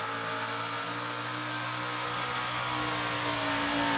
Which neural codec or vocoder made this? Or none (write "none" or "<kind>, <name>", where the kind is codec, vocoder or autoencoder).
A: none